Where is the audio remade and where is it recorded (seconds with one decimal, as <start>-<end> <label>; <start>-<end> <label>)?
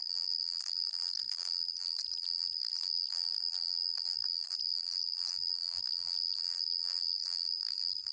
0.0-8.1 remade